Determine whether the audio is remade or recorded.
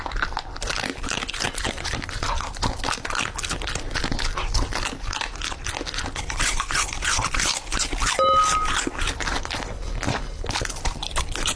recorded